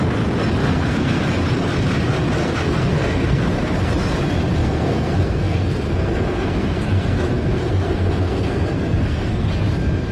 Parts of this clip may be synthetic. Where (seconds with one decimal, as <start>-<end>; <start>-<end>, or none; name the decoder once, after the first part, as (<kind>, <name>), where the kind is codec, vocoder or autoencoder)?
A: 0.6-1.2 (codec, SNAC); 2.4-3.9; 4.6-9.5

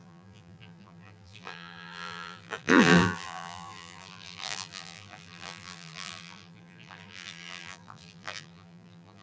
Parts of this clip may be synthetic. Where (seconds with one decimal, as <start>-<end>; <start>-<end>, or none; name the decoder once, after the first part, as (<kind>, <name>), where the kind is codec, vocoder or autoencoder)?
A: 0.0-9.2 (vocoder, BigVGAN v2)

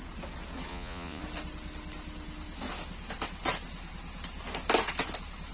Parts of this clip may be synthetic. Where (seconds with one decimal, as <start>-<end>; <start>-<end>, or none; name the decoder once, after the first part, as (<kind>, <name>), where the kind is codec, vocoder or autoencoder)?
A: 0.7-1.2 (vocoder, Vocos)

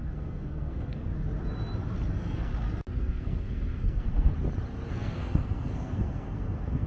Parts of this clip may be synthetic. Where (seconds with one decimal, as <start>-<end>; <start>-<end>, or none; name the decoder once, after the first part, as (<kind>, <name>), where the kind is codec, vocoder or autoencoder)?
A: 0.0-1.1 (codec, SNAC); 2.1-2.5; 3.0-4.3; 4.9-6.9

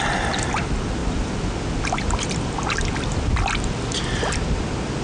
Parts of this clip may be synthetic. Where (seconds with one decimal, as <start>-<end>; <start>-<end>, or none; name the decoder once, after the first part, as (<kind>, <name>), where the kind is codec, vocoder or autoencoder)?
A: none